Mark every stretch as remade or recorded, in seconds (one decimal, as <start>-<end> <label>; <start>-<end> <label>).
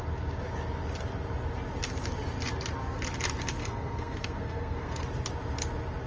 0.0-3.6 recorded; 3.6-5.0 remade; 5.0-6.1 recorded